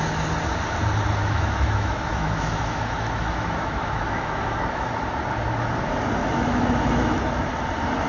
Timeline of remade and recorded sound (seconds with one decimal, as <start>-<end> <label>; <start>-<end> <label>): 0.0-1.2 recorded; 1.2-4.9 remade; 4.9-6.2 recorded; 6.2-7.5 remade; 7.5-8.1 recorded